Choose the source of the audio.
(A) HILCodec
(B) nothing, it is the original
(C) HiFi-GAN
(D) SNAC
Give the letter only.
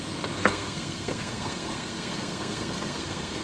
D